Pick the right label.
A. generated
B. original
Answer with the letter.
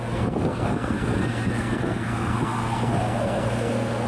A